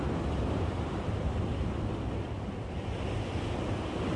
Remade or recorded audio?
recorded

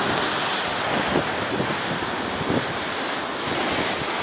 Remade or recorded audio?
recorded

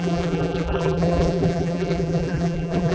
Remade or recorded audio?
remade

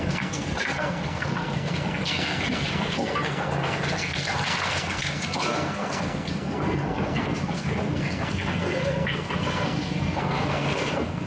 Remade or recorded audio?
remade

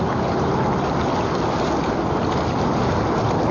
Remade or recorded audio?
recorded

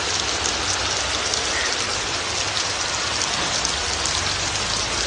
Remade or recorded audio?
recorded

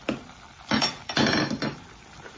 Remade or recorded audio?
recorded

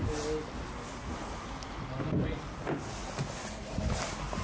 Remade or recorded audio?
recorded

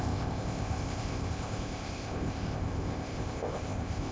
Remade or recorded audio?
remade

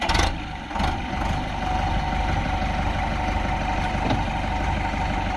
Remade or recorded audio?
recorded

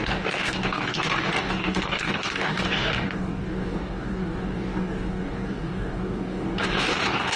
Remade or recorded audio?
remade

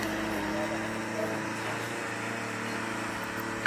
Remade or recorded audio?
recorded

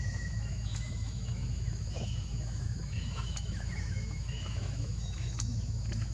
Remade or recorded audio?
remade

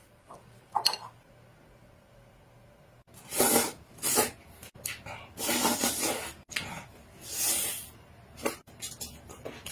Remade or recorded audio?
recorded